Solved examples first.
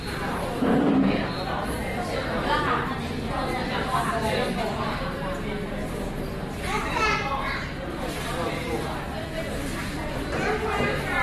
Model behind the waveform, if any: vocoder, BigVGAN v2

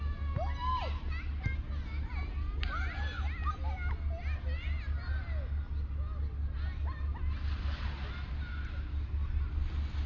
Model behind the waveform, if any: none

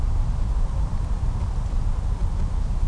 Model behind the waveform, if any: none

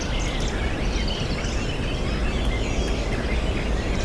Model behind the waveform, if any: none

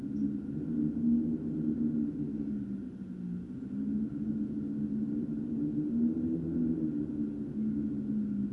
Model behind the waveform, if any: none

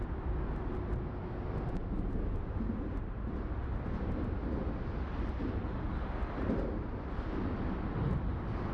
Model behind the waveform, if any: none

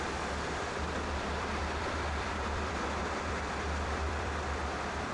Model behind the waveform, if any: vocoder, BigVGAN v2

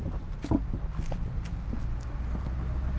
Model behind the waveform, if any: none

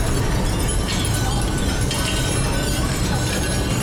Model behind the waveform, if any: none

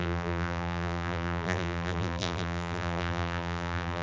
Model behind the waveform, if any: vocoder, BigVGAN v2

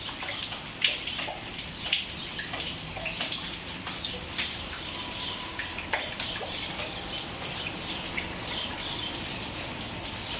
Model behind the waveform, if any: vocoder, BigVGAN v2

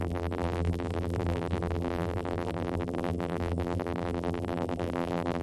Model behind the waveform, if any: vocoder, BigVGAN v2